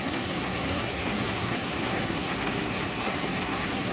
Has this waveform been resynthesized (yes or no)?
yes